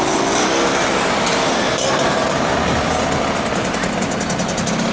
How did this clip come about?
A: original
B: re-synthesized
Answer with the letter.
A